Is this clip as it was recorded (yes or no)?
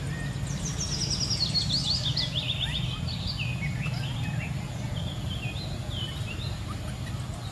yes